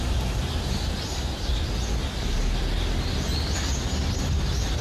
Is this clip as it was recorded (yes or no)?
yes